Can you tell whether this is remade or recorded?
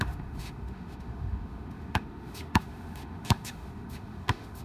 remade